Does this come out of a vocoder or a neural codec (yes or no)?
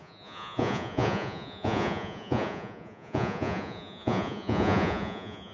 yes